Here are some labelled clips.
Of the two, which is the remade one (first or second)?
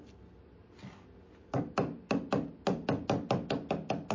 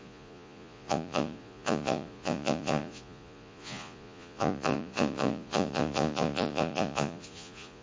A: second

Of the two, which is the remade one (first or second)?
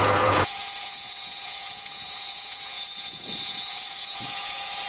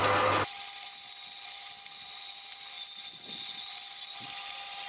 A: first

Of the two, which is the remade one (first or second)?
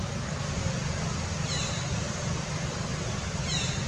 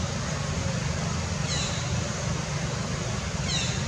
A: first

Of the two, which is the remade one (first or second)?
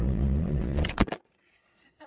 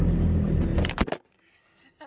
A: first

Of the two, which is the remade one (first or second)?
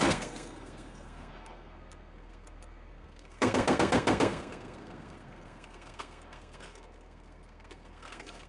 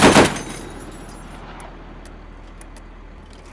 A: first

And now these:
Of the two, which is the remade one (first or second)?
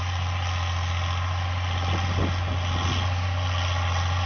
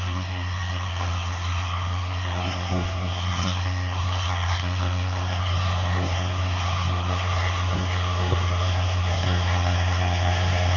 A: second